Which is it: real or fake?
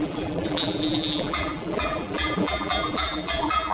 fake